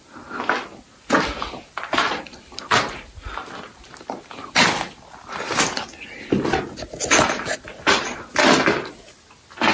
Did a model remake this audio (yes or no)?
no